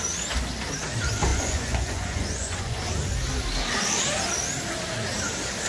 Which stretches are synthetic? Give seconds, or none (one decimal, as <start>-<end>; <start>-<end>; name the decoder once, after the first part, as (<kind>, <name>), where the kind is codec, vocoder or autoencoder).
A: 1.3-2.8 (vocoder, Vocos)